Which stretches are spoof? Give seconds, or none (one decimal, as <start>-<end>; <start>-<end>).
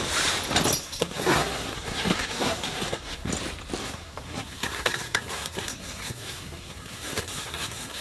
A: 0.8-3.3; 3.8-8.0